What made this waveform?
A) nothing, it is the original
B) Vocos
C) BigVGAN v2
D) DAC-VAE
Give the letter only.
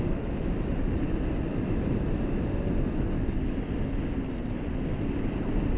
A